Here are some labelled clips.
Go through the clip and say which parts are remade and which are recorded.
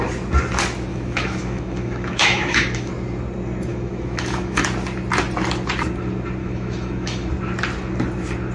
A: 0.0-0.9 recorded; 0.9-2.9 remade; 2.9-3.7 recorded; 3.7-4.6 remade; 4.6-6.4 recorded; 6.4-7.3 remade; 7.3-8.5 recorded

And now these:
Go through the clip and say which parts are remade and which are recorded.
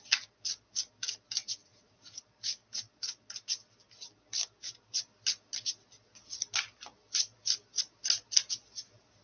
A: 0.0-1.6 recorded; 1.6-2.2 remade; 2.2-9.2 recorded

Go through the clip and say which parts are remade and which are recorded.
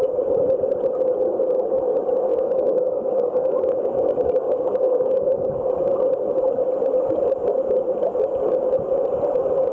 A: 0.0-2.3 recorded; 2.3-5.7 remade; 5.7-9.7 recorded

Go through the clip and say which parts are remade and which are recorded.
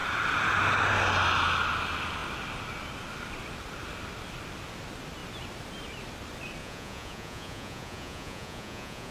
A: 0.0-6.6 recorded; 6.6-9.1 remade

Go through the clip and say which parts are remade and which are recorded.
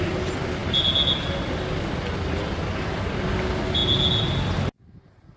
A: 0.0-5.4 recorded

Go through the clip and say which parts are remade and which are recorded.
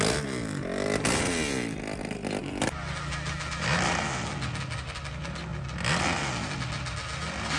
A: 0.0-7.6 recorded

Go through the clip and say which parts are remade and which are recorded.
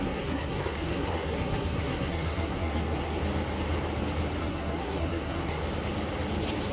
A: 0.0-3.2 remade; 3.2-4.4 recorded; 4.4-5.6 remade; 5.6-6.7 recorded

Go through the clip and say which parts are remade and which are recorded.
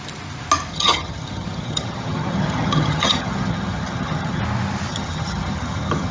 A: 0.0-0.7 recorded; 0.7-4.4 remade; 4.4-4.9 recorded; 4.9-6.1 remade